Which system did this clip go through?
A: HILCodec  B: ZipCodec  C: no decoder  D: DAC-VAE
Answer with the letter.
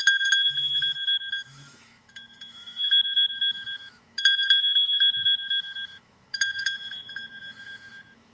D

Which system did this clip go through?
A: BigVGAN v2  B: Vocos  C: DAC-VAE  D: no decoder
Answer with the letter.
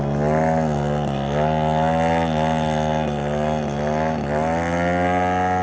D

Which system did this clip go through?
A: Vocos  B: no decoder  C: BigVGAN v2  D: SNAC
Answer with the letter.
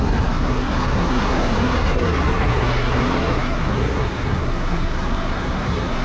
D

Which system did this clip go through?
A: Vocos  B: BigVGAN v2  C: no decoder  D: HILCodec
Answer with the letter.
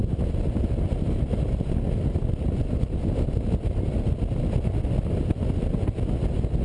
C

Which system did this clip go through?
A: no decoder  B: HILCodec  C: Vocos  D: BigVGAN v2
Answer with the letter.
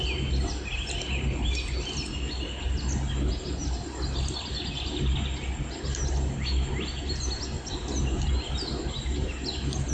A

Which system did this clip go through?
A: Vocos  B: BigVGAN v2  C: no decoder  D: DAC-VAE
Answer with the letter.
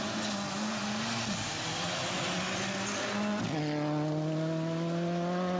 C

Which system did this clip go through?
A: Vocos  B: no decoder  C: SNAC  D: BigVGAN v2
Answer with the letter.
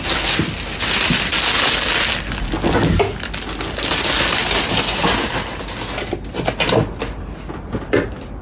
B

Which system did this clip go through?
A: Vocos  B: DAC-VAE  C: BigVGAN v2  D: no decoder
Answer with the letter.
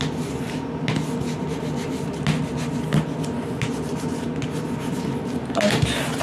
D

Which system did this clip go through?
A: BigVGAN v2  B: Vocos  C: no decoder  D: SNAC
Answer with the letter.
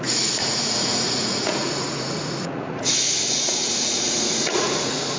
B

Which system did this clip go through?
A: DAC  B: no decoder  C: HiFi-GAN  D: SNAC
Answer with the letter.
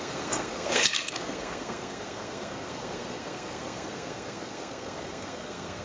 D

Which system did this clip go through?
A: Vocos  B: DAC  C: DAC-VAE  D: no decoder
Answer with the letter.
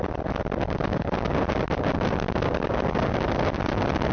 D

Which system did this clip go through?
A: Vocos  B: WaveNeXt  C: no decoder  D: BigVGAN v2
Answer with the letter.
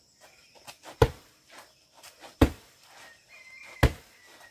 C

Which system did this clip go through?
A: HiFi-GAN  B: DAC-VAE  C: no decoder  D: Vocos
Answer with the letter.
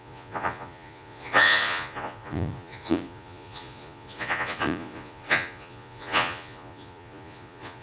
D